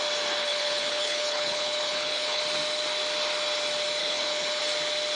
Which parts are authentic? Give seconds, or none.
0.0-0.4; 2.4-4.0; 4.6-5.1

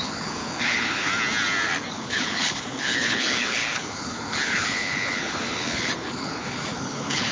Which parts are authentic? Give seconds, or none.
1.1-1.9